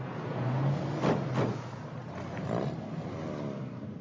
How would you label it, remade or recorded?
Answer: recorded